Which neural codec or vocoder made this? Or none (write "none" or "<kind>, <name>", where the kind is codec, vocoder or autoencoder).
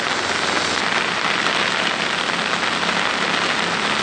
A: none